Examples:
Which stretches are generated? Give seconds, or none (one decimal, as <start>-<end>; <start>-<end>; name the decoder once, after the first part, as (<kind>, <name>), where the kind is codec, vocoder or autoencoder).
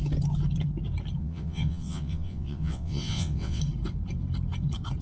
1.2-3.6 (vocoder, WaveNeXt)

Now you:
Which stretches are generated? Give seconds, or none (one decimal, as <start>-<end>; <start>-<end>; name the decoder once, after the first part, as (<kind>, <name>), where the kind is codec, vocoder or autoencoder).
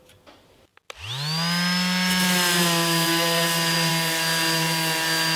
none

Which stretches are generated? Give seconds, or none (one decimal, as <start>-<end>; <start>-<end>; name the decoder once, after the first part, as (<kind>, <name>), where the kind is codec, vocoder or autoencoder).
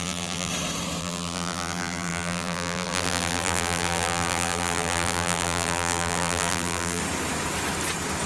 0.0-0.5 (vocoder, BigVGAN v2); 1.0-7.0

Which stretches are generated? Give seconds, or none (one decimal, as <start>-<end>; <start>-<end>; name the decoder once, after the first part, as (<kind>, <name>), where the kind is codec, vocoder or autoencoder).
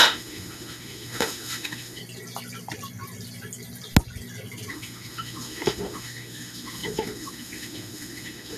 0.0-2.0 (autoencoder, DAC-VAE); 4.7-8.6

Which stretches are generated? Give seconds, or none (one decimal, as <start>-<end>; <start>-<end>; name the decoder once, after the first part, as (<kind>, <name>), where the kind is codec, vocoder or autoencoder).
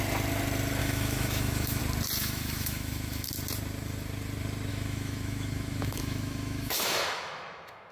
0.8-1.8 (autoencoder, DAC-VAE); 2.2-3.3; 4.7-7.9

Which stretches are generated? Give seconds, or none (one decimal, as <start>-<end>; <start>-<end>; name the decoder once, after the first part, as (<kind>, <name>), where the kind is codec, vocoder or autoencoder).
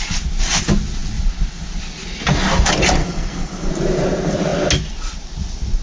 3.0-3.7 (codec, SNAC)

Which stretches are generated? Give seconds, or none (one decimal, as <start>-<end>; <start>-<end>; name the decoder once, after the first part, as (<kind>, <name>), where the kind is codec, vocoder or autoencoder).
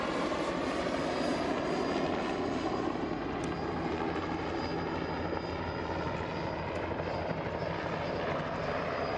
none